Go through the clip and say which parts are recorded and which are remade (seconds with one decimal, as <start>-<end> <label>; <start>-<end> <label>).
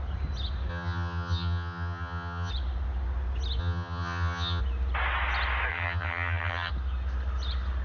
0.0-0.7 recorded; 0.7-2.5 remade; 2.5-3.6 recorded; 3.6-4.6 remade; 4.6-5.7 recorded; 5.7-6.7 remade; 6.7-7.8 recorded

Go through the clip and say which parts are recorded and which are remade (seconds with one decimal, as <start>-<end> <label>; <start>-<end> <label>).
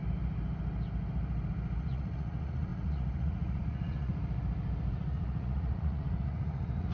0.0-1.9 recorded; 1.9-4.1 remade; 4.1-4.9 recorded; 4.9-6.9 remade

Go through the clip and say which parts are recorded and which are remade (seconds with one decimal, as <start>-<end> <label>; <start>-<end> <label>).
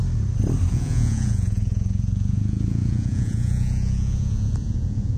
0.0-0.7 recorded; 0.7-5.2 remade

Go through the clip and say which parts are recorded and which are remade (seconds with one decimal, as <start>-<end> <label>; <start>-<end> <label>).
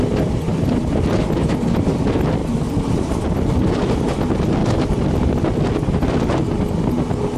0.0-0.5 recorded; 0.5-1.6 remade; 1.6-2.4 recorded; 2.4-3.8 remade; 3.8-4.6 recorded; 4.6-5.4 remade; 5.4-7.4 recorded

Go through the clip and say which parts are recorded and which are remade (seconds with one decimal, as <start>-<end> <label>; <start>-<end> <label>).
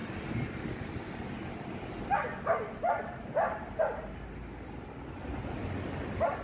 0.0-6.4 recorded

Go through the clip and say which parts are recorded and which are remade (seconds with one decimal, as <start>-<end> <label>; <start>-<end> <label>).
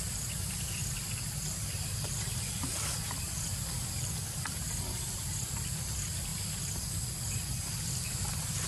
0.0-6.3 remade; 6.3-7.0 recorded; 7.0-8.7 remade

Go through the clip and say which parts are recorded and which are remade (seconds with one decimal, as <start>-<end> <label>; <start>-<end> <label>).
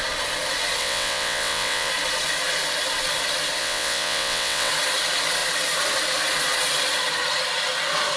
0.0-0.8 recorded; 0.8-1.9 remade; 1.9-3.6 recorded; 3.6-4.7 remade; 4.7-8.2 recorded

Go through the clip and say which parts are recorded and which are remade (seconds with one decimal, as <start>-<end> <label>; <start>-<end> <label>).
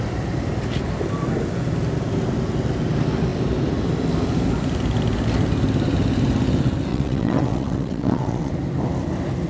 0.0-6.9 recorded; 6.9-8.5 remade; 8.5-9.5 recorded